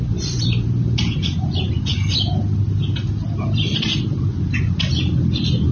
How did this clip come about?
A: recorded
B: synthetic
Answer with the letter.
B